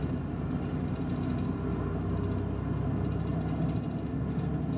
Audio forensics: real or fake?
real